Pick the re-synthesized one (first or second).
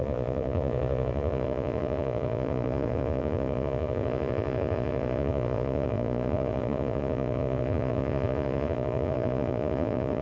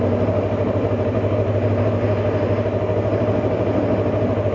first